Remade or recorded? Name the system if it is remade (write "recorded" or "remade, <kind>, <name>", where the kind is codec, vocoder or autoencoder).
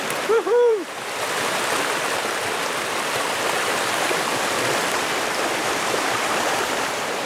remade, vocoder, BigVGAN v2